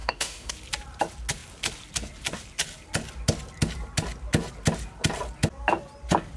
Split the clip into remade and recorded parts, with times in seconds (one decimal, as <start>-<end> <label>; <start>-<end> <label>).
0.0-0.5 remade; 0.5-6.4 recorded